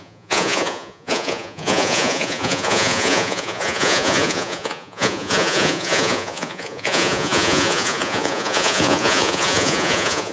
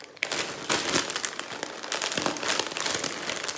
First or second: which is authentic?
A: second